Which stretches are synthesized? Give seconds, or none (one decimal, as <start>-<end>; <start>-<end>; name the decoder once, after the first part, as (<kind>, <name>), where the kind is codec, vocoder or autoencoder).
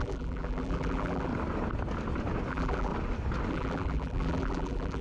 0.0-1.3 (vocoder, BigVGAN v2); 2.5-2.9; 3.5-5.0